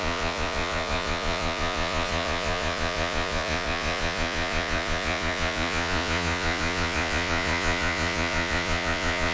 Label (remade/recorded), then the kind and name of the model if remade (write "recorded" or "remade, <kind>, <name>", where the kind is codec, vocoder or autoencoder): remade, vocoder, Vocos